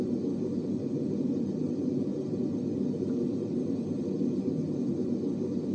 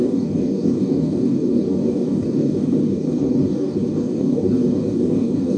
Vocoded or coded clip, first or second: second